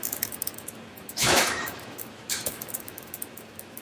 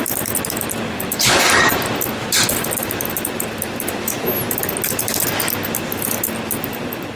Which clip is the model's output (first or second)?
first